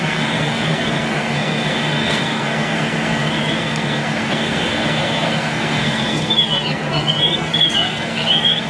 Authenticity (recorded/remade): remade